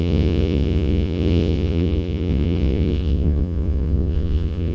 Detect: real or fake fake